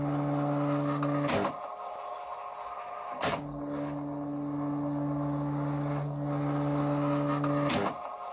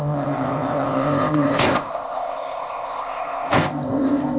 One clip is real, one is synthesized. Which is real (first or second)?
first